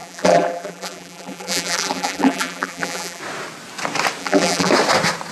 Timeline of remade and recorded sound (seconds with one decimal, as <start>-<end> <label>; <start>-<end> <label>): 0.0-3.2 remade; 3.2-4.2 recorded; 4.2-4.7 remade; 4.7-5.3 recorded